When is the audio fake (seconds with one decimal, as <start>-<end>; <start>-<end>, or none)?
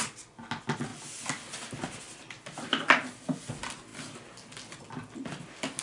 none